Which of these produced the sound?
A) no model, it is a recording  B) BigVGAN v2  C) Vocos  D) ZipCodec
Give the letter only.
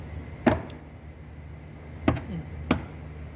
A